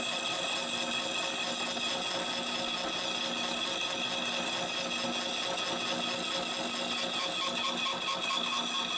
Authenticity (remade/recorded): recorded